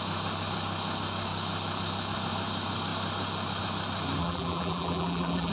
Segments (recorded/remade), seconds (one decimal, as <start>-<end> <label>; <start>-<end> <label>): 0.0-4.2 recorded; 4.2-5.5 remade